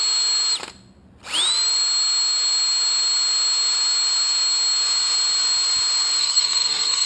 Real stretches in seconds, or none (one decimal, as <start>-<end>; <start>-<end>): 0.0-6.2